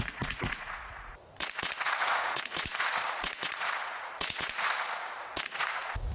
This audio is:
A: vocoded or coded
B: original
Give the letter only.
A